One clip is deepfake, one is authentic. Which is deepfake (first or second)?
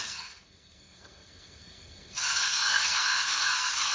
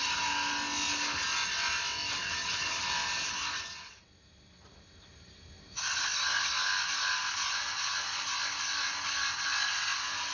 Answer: first